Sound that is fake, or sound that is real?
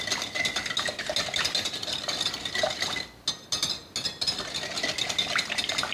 real